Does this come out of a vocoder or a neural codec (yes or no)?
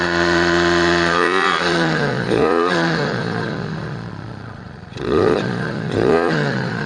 yes